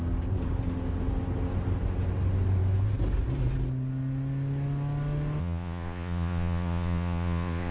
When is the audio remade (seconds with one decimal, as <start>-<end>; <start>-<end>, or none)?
5.4-7.7